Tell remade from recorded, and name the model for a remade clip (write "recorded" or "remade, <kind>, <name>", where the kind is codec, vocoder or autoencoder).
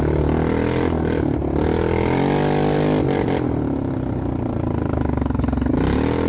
recorded